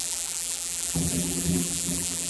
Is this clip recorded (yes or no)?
no